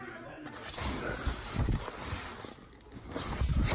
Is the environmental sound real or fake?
real